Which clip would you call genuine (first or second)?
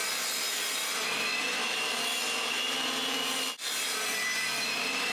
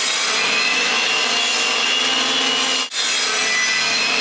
second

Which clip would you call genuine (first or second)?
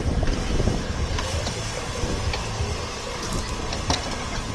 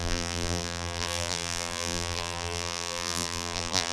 first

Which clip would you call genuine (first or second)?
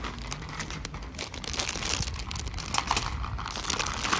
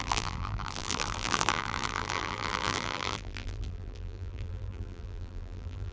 first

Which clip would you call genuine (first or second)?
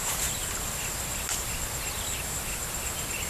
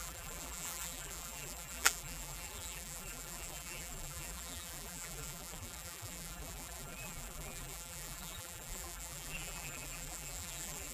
first